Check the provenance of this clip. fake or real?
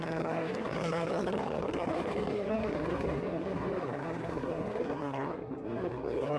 fake